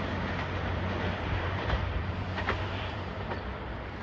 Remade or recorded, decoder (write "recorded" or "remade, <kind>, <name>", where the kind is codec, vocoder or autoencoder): remade, vocoder, BigVGAN v2